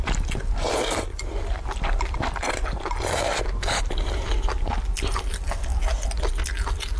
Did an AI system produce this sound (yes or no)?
no